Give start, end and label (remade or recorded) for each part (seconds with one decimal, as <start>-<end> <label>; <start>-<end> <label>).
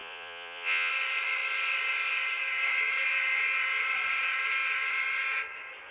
0.0-0.9 remade; 0.9-5.9 recorded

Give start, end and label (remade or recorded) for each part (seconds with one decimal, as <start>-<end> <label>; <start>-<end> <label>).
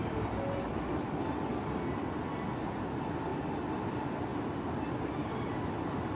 0.0-6.2 recorded